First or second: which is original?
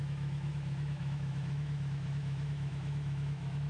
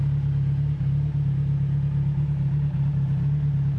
second